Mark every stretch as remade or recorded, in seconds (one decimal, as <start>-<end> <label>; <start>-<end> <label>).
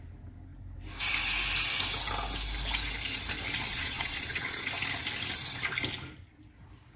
0.0-3.7 recorded; 3.7-4.7 remade; 4.7-7.0 recorded